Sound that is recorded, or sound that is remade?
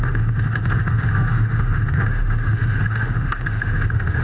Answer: remade